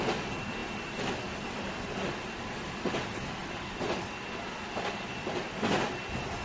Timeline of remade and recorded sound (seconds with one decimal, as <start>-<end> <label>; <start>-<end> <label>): 0.0-6.4 recorded